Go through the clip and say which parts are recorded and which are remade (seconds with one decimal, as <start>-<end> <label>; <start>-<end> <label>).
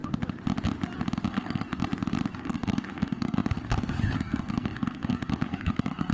0.0-1.3 recorded; 1.3-1.8 remade; 1.8-2.3 recorded; 2.3-6.1 remade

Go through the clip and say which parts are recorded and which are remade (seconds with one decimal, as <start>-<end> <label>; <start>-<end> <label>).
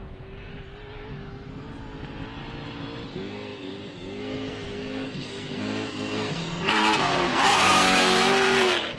0.0-0.5 remade; 0.5-3.1 recorded; 3.1-9.0 remade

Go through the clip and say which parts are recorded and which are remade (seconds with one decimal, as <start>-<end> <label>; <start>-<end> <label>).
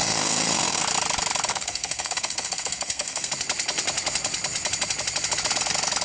0.0-0.8 remade; 0.8-1.5 recorded; 1.5-3.3 remade; 3.3-6.0 recorded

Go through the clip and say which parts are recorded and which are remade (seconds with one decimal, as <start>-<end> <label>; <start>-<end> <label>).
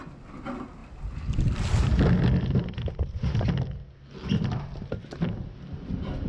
0.0-6.3 recorded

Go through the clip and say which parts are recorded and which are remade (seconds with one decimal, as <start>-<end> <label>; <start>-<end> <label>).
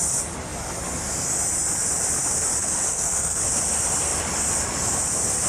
0.0-2.6 recorded; 2.6-3.4 remade; 3.4-5.5 recorded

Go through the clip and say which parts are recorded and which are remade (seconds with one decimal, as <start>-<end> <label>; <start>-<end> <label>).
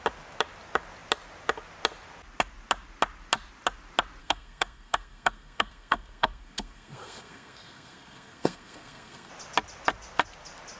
0.0-4.2 recorded; 4.2-9.3 remade; 9.3-10.8 recorded